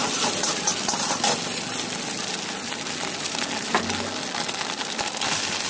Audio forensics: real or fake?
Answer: real